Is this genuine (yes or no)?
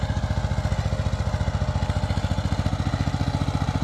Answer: yes